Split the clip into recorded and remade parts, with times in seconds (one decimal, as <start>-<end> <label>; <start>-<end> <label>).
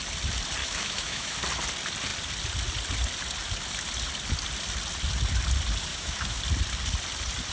0.0-0.6 recorded; 0.6-1.4 remade; 1.4-5.9 recorded; 5.9-6.4 remade; 6.4-7.5 recorded